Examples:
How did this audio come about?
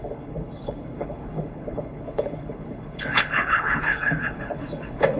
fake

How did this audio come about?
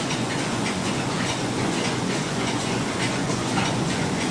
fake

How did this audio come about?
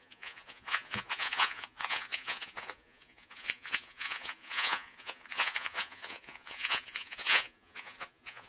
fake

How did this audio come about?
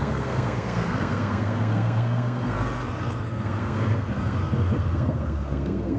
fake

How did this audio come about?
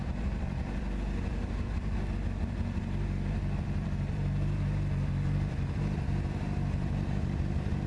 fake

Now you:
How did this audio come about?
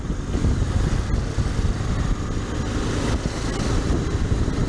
real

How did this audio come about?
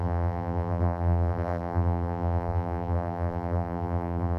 fake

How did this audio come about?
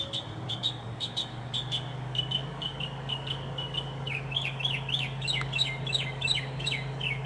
fake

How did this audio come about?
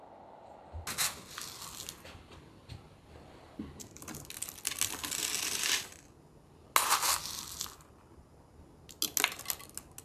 real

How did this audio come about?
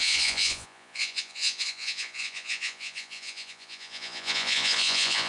fake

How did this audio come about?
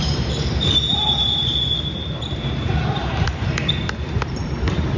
fake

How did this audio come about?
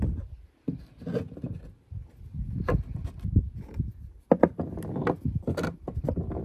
real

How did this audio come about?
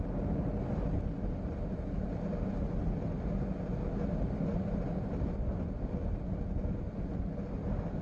real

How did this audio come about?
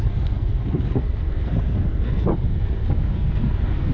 fake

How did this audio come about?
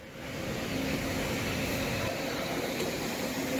real